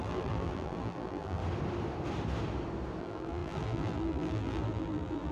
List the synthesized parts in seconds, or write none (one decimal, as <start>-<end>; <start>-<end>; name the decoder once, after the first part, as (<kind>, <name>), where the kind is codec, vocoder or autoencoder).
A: 0.0-1.4 (vocoder, BigVGAN v2); 3.0-5.3